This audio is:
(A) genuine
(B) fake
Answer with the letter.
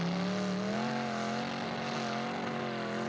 A